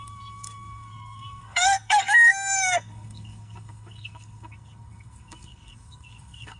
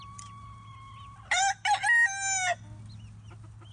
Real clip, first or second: second